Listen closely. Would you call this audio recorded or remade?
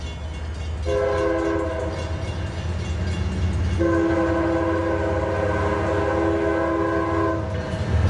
recorded